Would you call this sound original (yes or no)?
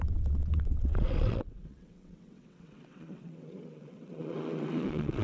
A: no